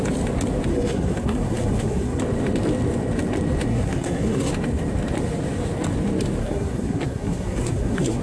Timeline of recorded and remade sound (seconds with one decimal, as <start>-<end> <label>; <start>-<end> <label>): 0.0-0.7 recorded; 0.7-2.2 remade; 2.2-3.7 recorded; 3.7-4.5 remade; 4.5-6.4 recorded; 6.4-8.2 remade